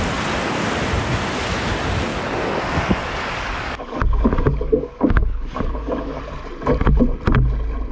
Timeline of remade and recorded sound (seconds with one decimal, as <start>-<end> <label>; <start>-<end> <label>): 0.0-2.1 recorded; 2.1-6.2 remade; 6.2-7.9 recorded